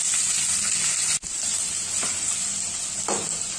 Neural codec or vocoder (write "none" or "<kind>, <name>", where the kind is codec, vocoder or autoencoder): none